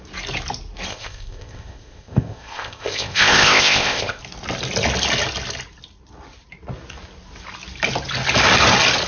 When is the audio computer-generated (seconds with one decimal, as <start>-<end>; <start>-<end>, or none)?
0.9-4.2